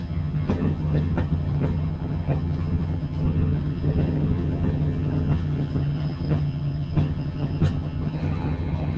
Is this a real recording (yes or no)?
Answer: no